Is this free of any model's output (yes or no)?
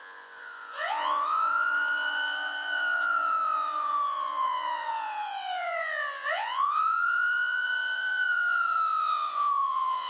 no